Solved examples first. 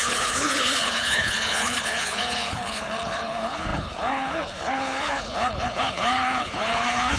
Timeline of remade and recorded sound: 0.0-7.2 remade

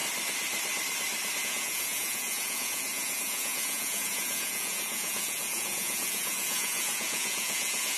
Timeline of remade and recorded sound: 0.0-1.4 recorded; 1.4-8.0 remade

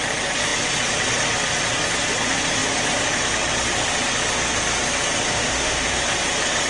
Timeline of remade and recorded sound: 0.0-5.3 recorded; 5.3-6.0 remade; 6.0-6.7 recorded

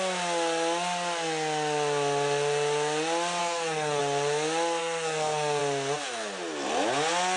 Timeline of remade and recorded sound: 0.0-3.4 recorded; 3.4-4.0 remade; 4.0-4.8 recorded; 4.8-5.6 remade; 5.6-7.4 recorded

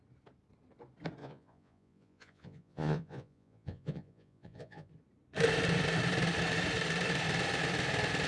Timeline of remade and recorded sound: 0.0-1.2 recorded; 1.2-4.9 remade; 4.9-8.3 recorded

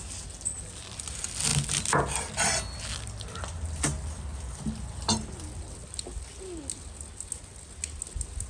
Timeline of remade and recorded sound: 0.0-8.5 recorded

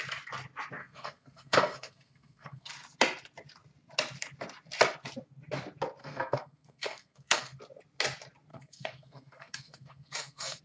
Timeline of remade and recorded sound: 0.0-0.8 recorded; 0.8-2.7 remade; 2.7-6.0 recorded; 6.0-7.6 remade; 7.6-8.5 recorded; 8.5-10.6 remade